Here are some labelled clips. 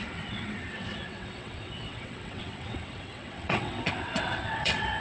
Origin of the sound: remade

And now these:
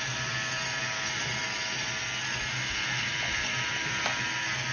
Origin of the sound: recorded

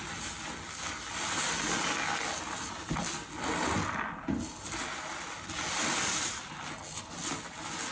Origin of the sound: recorded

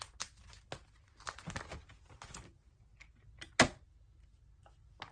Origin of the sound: recorded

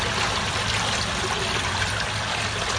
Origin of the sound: recorded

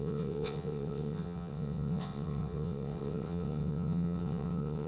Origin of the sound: remade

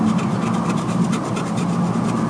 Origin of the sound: recorded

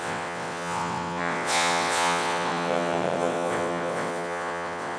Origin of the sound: remade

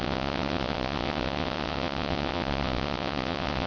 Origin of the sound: remade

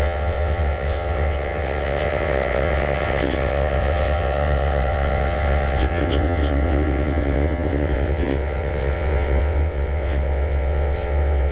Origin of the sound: remade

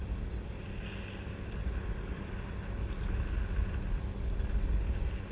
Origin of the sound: recorded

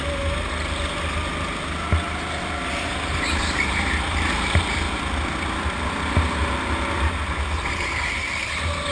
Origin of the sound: recorded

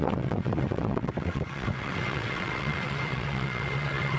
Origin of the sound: remade